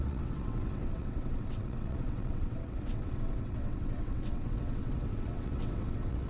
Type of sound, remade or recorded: remade